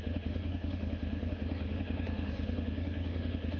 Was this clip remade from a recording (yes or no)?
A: yes